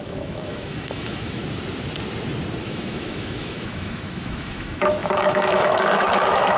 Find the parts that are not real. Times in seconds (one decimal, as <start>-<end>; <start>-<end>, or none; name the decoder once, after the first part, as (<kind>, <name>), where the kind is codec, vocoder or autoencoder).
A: 0.0-1.4 (autoencoder, DAC-VAE); 2.6-6.6